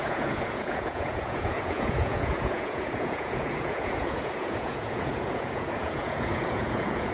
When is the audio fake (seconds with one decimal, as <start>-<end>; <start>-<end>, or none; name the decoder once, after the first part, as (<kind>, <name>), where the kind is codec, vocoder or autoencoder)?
0.0-7.1 (vocoder, Vocos)